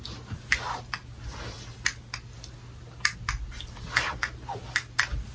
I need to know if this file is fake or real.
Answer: real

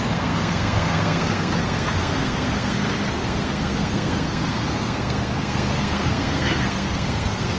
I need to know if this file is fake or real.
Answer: fake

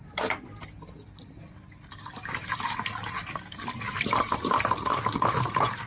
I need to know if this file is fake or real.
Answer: real